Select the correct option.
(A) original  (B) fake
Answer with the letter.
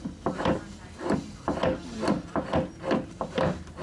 A